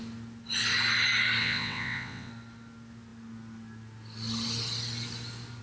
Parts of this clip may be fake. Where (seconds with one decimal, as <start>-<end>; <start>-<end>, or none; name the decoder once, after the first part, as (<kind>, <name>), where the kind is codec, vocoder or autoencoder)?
1.4-2.3 (vocoder, WaveNeXt)

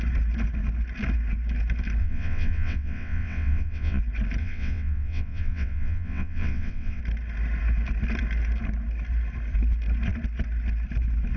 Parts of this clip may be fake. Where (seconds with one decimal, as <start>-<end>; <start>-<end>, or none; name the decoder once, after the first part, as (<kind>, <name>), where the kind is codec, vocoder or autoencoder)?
2.0-4.0 (vocoder, WaveNeXt); 4.4-7.0